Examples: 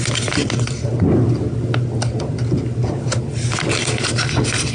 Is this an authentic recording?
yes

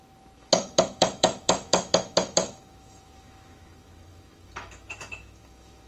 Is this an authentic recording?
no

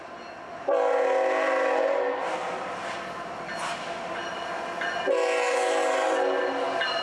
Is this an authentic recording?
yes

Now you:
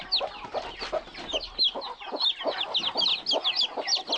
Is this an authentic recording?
yes